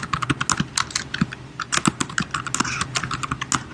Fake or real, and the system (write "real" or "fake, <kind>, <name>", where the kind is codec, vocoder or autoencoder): real